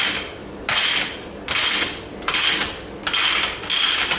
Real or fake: real